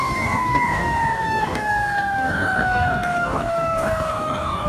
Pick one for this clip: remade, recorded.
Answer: remade